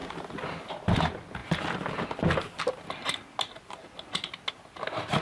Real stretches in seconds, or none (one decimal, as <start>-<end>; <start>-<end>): 0.0-5.2